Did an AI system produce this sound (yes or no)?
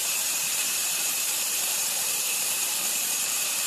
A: yes